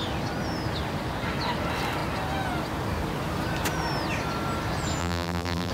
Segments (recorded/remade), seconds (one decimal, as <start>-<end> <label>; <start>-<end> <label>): 0.0-5.0 recorded; 5.0-5.7 remade